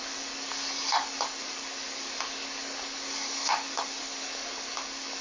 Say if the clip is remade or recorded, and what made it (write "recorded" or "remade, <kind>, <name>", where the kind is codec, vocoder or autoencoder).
remade, codec, DAC